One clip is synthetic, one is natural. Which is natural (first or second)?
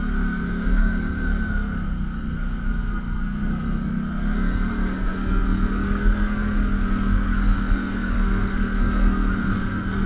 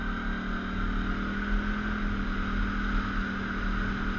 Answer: second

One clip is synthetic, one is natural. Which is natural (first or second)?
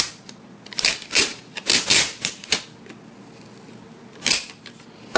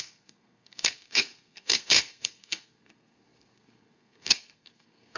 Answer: first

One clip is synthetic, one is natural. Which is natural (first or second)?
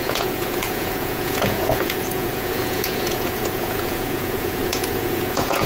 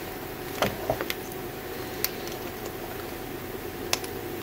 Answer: second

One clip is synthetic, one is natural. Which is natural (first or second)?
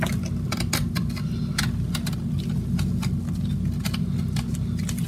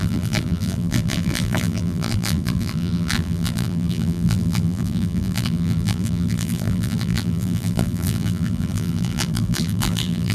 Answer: first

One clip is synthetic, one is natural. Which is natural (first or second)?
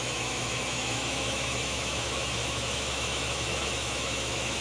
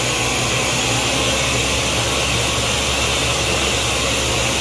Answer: second